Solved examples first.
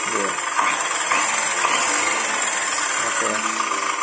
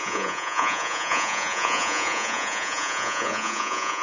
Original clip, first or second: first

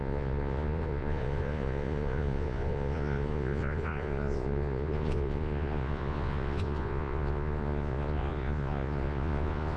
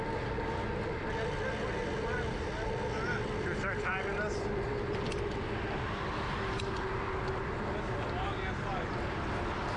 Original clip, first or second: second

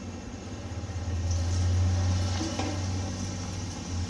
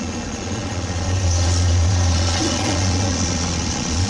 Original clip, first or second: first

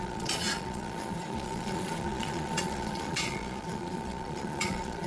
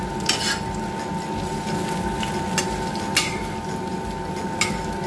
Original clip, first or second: second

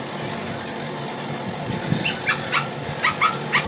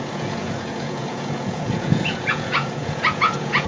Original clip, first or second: first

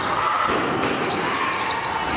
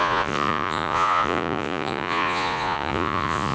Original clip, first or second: first